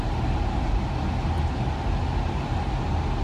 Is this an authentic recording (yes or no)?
yes